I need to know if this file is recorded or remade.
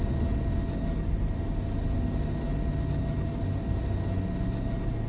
recorded